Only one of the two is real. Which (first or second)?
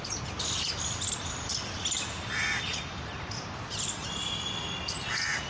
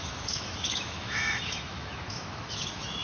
first